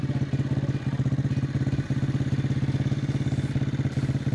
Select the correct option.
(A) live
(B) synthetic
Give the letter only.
A